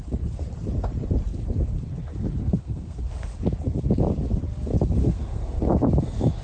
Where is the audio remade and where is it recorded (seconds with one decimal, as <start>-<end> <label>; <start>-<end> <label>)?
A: 0.0-2.4 recorded; 2.4-3.0 remade; 3.0-5.0 recorded; 5.0-5.6 remade; 5.6-6.4 recorded